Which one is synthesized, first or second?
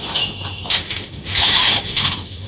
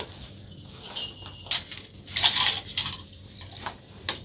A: first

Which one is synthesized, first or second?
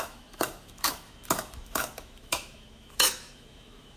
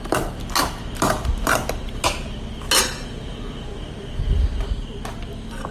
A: first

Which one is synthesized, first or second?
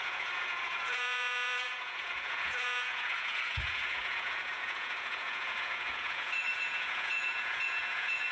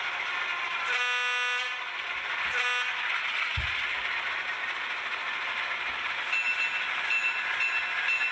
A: first